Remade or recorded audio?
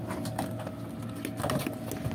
recorded